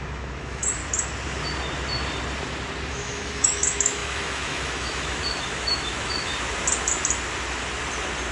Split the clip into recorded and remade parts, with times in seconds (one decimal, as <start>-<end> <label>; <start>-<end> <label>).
0.0-0.8 remade; 0.8-2.9 recorded; 2.9-6.3 remade; 6.3-8.3 recorded